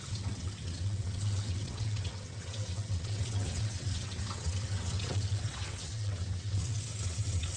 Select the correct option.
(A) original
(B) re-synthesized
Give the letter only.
B